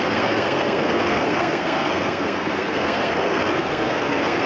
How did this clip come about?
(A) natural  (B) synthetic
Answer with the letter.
B